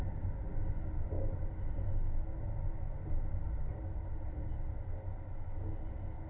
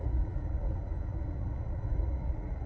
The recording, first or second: first